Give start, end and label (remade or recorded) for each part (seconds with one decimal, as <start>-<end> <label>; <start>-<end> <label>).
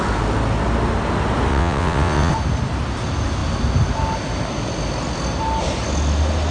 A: 0.0-1.5 recorded; 1.5-2.3 remade; 2.3-6.5 recorded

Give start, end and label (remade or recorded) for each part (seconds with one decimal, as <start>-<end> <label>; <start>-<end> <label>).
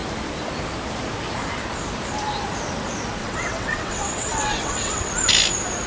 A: 0.0-3.2 recorded; 3.2-5.1 remade; 5.1-5.9 recorded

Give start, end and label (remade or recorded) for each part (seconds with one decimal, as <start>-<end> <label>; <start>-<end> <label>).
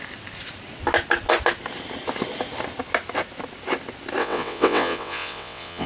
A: 0.0-4.2 recorded; 4.2-5.9 remade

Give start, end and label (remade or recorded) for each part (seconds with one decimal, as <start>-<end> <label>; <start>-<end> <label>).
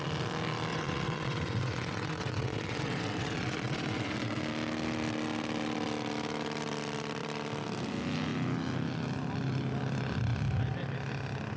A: 0.0-0.7 recorded; 0.7-4.4 remade; 4.4-11.6 recorded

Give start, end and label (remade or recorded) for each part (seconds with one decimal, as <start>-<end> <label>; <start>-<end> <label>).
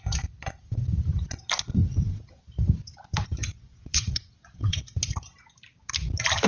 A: 0.0-1.8 recorded; 1.8-2.3 remade; 2.3-3.4 recorded; 3.4-4.8 remade; 4.8-6.5 recorded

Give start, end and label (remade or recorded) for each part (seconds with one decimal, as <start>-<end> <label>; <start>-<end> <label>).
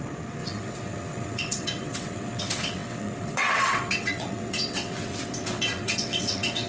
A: 0.0-6.7 remade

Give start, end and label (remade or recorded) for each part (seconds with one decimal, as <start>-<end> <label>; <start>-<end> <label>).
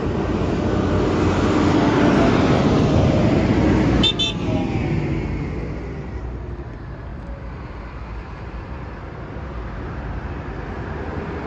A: 0.0-11.5 recorded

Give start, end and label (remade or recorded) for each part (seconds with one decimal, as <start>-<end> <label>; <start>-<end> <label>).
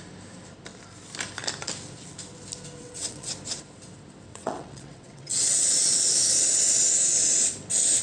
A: 0.0-2.8 recorded; 2.8-3.3 remade; 3.3-4.3 recorded; 4.3-6.1 remade; 6.1-8.0 recorded